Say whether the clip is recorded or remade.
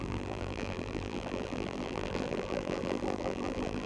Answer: remade